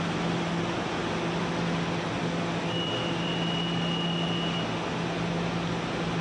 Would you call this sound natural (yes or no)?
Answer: yes